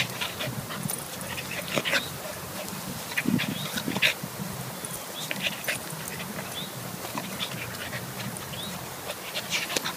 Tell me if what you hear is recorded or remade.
recorded